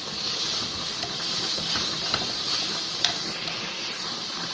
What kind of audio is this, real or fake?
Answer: fake